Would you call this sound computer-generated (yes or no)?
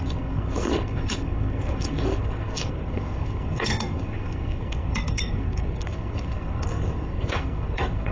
yes